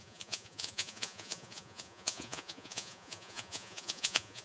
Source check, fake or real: fake